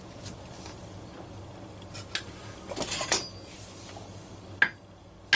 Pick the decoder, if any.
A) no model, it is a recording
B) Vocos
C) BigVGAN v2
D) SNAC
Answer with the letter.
A